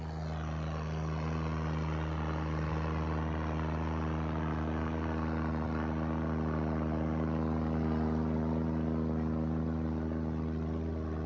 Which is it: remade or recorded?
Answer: recorded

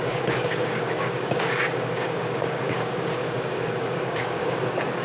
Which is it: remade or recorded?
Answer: remade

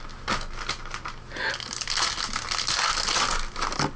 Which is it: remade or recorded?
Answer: recorded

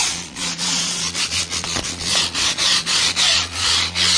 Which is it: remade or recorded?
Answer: remade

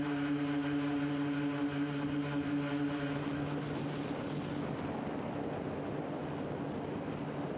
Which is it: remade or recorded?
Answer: recorded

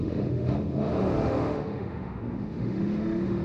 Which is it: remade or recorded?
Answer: remade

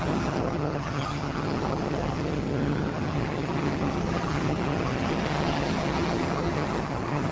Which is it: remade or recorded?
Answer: remade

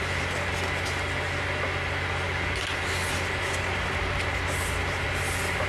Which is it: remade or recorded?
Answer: recorded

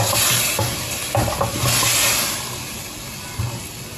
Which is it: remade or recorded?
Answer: recorded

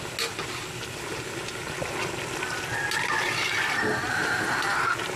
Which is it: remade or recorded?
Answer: recorded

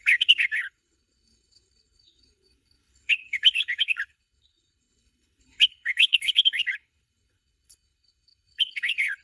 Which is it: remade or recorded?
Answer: remade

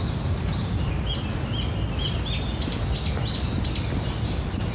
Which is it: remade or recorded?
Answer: recorded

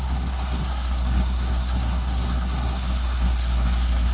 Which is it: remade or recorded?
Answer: remade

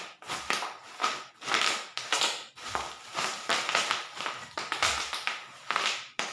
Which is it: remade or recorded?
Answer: recorded